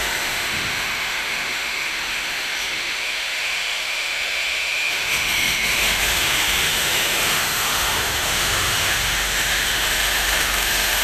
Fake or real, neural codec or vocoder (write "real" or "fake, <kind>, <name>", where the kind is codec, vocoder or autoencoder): fake, autoencoder, DAC-VAE